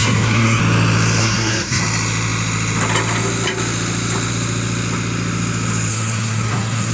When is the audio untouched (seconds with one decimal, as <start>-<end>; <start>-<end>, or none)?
0.6-1.2; 1.8-5.9